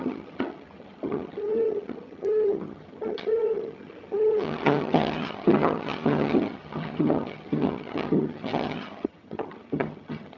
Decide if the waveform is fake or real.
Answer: fake